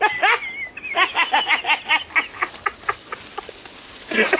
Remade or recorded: recorded